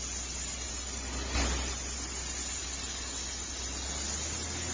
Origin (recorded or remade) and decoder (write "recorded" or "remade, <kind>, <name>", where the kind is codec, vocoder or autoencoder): recorded